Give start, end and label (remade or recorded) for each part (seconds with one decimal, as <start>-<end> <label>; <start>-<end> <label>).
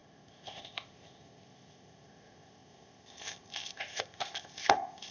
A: 0.0-5.1 remade